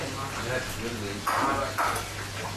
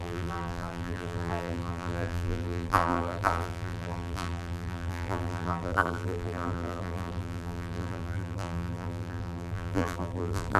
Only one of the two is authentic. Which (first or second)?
first